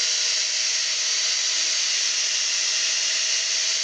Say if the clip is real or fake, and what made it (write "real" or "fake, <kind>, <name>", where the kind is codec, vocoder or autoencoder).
real